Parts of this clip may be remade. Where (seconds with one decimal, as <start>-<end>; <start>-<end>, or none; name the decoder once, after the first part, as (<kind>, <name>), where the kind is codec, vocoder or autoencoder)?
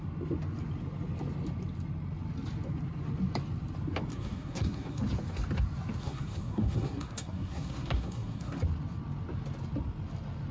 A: 4.1-5.0 (codec, SNAC); 6.0-8.6